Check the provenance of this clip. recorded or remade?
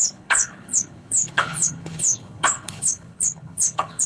remade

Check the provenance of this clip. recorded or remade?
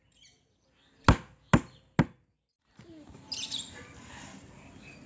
recorded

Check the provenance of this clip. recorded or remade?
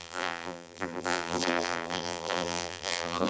remade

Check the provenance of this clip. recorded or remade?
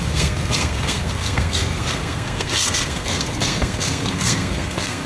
remade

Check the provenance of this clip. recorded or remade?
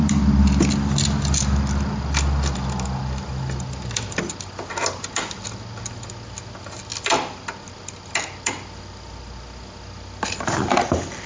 recorded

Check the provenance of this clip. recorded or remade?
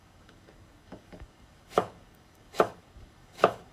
remade